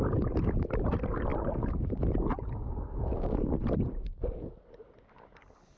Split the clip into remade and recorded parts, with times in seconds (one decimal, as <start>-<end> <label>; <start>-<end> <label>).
0.0-5.8 recorded